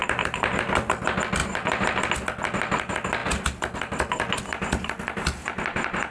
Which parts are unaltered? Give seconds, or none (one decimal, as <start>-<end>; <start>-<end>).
0.0-1.4; 2.1-5.4